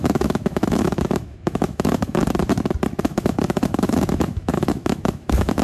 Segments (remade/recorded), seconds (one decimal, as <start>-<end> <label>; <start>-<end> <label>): 0.0-2.2 remade; 2.2-3.0 recorded; 3.0-5.6 remade